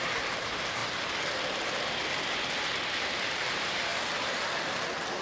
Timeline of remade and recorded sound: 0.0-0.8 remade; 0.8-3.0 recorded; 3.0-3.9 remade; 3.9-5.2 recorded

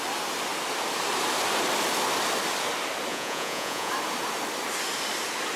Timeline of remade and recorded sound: 0.0-3.1 recorded; 3.1-3.9 remade; 3.9-5.6 recorded

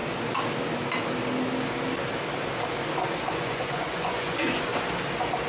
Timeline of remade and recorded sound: 0.0-3.3 recorded; 3.3-4.7 remade; 4.7-5.5 recorded

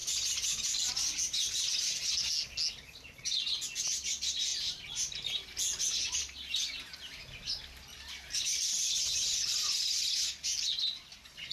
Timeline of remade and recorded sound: 0.0-11.5 recorded

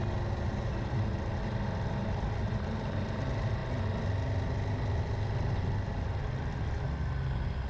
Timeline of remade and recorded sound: 0.0-7.7 recorded

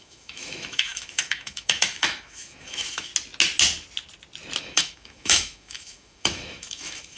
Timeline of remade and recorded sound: 0.0-3.1 remade; 3.1-4.6 recorded; 4.6-7.2 remade